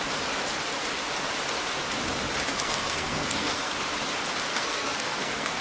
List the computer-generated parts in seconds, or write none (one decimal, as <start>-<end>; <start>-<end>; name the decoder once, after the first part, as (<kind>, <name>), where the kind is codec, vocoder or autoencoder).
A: 2.5-3.7 (codec, SNAC); 4.5-5.6